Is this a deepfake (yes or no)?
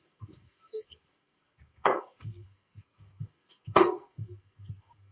yes